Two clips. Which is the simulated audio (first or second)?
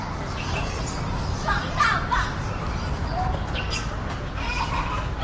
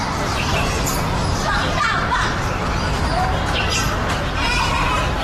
second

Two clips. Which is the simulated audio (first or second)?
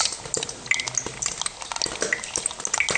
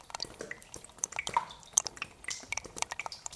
second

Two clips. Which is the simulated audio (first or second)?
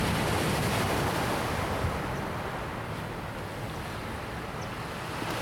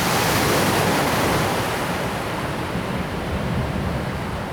second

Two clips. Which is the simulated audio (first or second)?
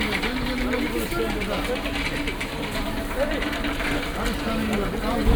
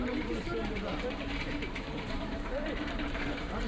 second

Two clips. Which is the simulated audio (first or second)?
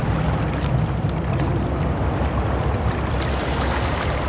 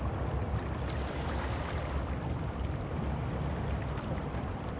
second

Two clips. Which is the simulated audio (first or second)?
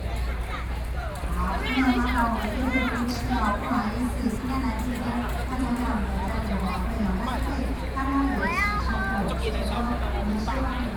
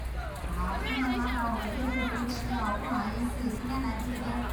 first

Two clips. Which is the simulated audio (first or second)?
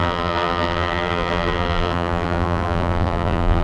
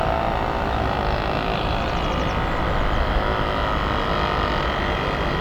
first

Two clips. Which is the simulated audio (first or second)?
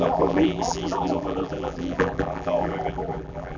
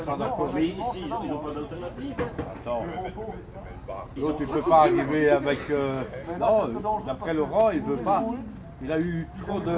first